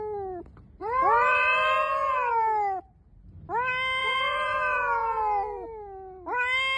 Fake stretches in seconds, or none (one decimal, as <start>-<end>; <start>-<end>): 0.8-2.3; 4.0-5.2